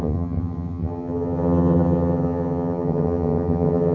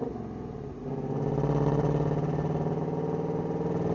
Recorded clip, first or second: second